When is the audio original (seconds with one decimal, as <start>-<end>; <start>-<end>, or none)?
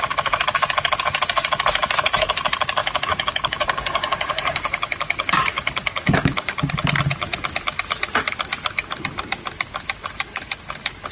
0.0-2.8; 6.7-11.1